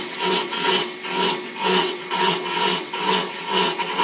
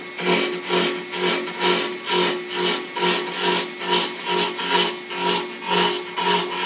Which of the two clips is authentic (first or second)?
second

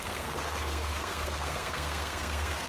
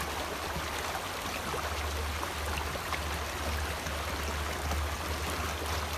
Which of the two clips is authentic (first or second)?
second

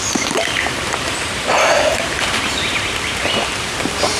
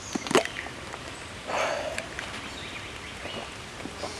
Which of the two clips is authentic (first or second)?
second